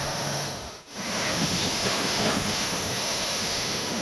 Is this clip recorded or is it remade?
remade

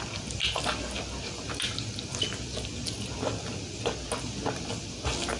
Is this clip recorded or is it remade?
recorded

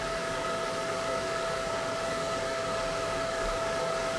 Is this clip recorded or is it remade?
remade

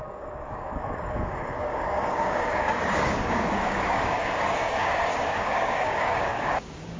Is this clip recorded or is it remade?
remade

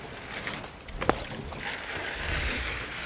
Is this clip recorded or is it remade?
recorded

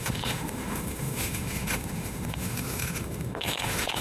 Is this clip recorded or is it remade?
remade